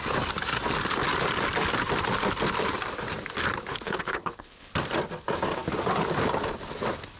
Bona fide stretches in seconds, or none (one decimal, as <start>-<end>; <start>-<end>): 0.0-3.7; 4.7-7.2